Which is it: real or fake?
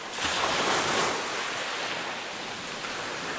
real